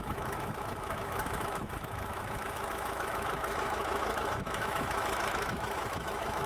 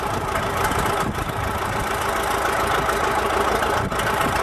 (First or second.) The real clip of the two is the second